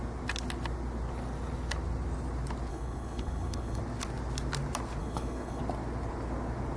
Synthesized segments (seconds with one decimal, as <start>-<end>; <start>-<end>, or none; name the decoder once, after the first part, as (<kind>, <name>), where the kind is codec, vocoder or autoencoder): 2.7-3.8 (codec, HILCodec); 5.0-5.6